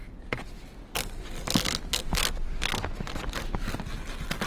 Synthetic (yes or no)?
no